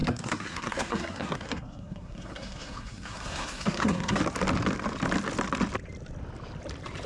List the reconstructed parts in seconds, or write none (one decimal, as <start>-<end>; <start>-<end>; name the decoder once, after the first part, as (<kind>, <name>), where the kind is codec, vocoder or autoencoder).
0.0-4.2 (codec, SNAC)